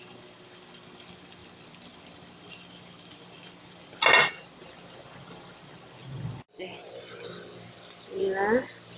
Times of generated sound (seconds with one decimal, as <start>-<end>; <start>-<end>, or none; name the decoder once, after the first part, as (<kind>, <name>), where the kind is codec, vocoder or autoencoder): none